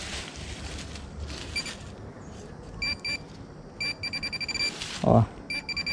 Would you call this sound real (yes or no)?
yes